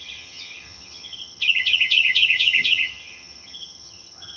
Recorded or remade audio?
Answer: remade